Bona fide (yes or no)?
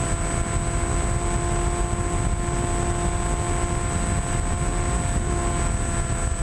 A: yes